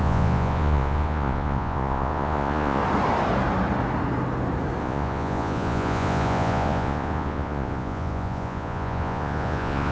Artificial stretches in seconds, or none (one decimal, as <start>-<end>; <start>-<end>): 0.0-2.8; 4.8-9.9